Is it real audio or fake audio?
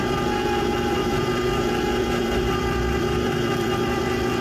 fake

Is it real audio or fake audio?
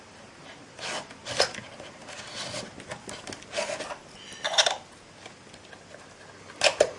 real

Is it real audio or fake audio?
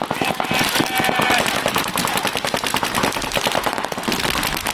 real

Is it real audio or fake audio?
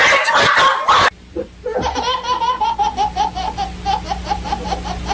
real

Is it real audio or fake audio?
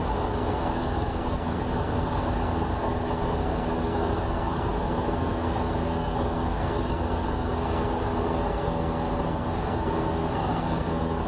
fake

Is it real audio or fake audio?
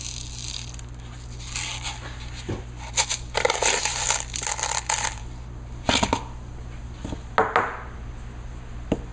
real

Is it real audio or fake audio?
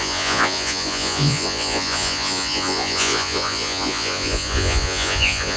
fake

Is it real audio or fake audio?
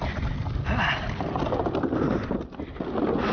real